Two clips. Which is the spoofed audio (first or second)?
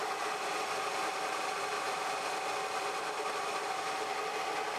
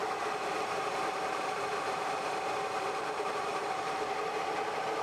second